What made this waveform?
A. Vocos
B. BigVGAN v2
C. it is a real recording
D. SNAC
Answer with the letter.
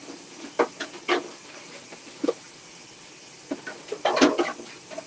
C